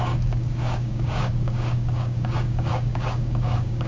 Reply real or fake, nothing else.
fake